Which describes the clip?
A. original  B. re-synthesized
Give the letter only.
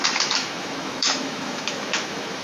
B